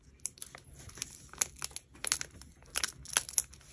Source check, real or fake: real